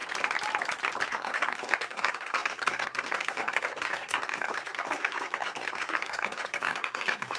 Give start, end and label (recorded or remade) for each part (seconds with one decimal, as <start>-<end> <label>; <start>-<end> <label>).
0.0-1.1 recorded; 1.1-7.4 remade